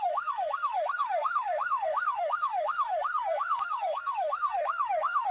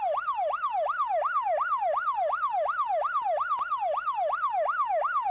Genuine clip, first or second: second